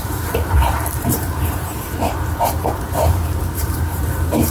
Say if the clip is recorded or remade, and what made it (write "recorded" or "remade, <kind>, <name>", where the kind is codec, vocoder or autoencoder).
remade, vocoder, BigVGAN v2